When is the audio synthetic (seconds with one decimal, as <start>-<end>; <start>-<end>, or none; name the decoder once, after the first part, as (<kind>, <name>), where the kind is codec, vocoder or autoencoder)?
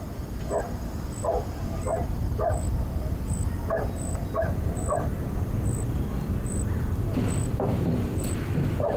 0.0-9.0 (vocoder, BigVGAN v2)